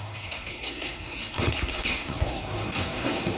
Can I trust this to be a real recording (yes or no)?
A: no